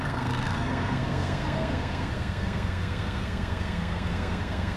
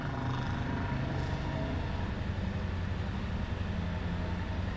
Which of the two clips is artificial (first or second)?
first